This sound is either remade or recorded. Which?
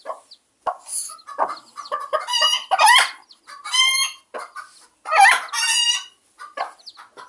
recorded